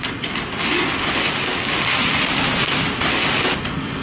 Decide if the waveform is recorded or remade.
recorded